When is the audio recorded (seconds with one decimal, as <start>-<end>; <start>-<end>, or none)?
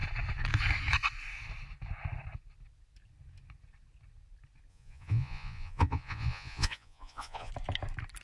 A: 0.0-4.7; 7.5-8.2